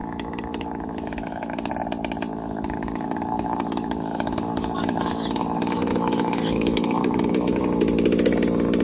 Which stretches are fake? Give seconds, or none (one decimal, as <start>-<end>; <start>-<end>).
0.0-1.7; 2.4-7.6